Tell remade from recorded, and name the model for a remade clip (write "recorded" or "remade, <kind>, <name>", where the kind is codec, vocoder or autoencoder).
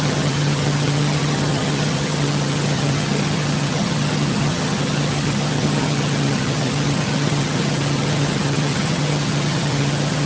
remade, vocoder, HiFi-GAN